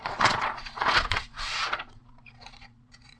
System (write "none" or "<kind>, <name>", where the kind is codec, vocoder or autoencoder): vocoder, Vocos